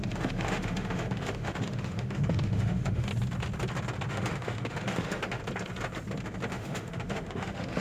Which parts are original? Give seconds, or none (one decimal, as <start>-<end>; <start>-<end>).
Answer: 3.1-4.1; 5.4-6.5